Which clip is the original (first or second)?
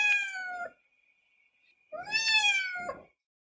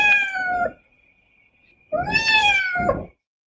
first